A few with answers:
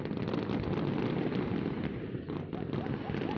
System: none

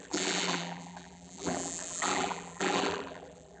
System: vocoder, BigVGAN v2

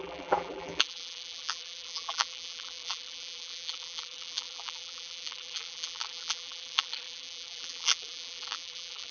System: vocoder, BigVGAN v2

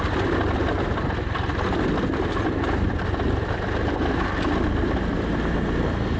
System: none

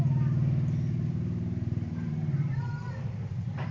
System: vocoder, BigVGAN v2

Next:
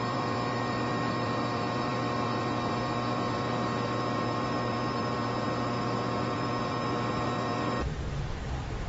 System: vocoder, BigVGAN v2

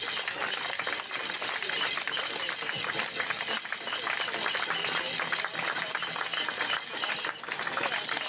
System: none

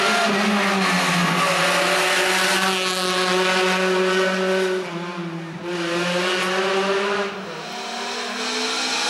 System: none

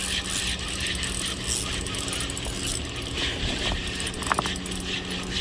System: none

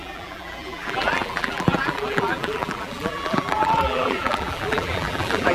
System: vocoder, BigVGAN v2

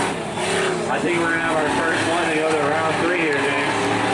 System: none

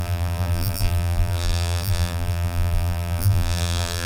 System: vocoder, BigVGAN v2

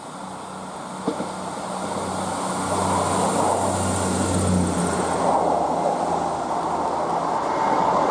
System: none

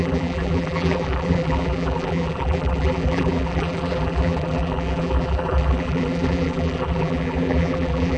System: vocoder, BigVGAN v2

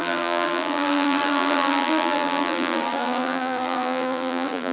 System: vocoder, BigVGAN v2